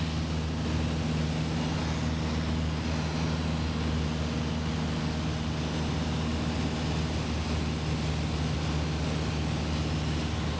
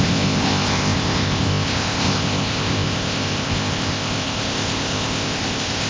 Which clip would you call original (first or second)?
first